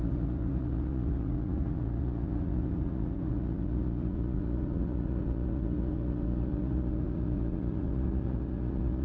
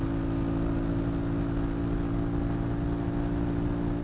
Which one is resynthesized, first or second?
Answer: first